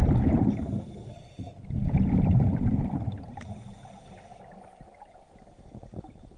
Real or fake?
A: real